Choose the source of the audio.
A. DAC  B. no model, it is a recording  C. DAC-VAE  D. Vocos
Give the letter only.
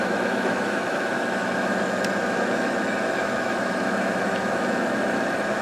C